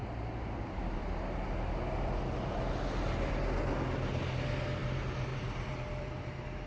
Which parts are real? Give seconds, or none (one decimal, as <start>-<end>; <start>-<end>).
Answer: 0.0-5.3; 6.3-6.7